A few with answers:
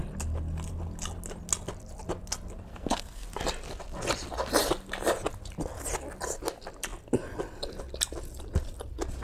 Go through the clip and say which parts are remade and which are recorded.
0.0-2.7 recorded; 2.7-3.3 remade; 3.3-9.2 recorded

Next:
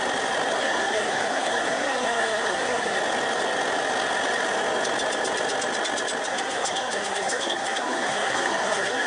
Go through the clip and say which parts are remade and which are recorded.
0.0-0.6 recorded; 0.6-3.0 remade; 3.0-6.3 recorded; 6.3-9.1 remade

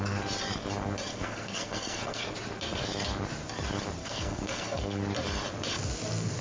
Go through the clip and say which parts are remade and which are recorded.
0.0-1.1 recorded; 1.1-2.2 remade; 2.2-4.0 recorded; 4.0-5.0 remade; 5.0-6.4 recorded